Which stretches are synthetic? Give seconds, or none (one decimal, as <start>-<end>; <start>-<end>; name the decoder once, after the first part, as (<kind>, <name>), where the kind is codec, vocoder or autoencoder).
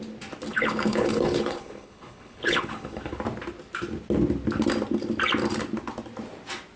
0.5-3.2 (codec, HILCodec)